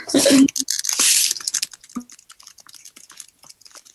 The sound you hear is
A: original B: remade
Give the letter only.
A